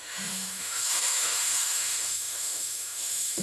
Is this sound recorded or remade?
remade